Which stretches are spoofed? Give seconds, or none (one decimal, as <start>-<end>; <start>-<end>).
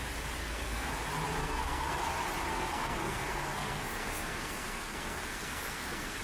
0.4-0.9; 1.4-2.0; 2.5-6.2